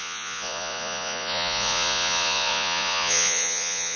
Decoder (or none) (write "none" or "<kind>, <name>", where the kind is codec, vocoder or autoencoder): vocoder, Vocos